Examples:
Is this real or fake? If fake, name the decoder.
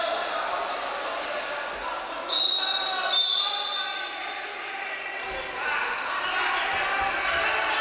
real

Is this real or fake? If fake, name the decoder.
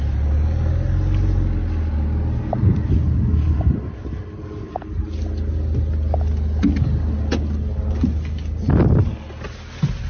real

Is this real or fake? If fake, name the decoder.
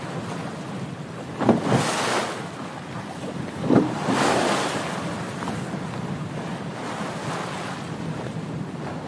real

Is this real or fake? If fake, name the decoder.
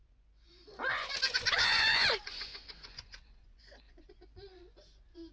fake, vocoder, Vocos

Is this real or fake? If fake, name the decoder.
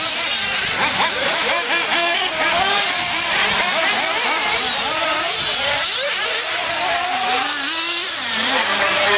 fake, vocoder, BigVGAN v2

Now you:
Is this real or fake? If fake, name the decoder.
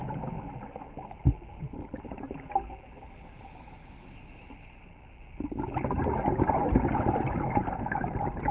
real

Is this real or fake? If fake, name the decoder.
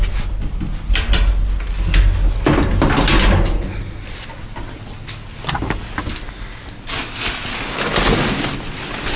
real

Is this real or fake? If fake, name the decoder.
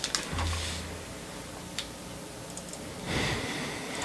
real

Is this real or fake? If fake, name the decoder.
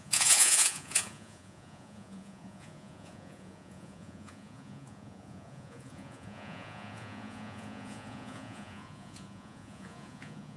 fake, vocoder, Vocos